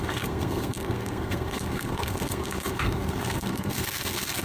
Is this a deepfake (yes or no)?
yes